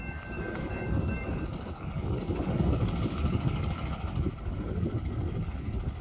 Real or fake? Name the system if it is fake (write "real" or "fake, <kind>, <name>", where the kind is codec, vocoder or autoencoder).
fake, codec, DAC